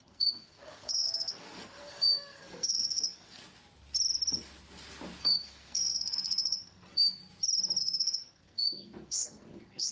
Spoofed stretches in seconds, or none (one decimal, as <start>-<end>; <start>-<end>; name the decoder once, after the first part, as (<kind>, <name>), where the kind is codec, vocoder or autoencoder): 0.0-3.4 (codec, SNAC); 5.2-7.2; 7.8-9.9